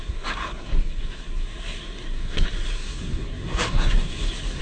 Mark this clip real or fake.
fake